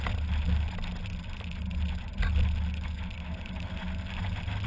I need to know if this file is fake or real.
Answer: real